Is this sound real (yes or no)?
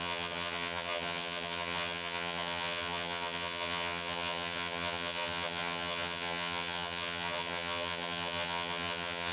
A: no